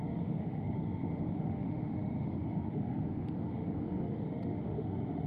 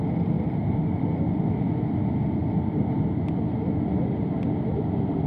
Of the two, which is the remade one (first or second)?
first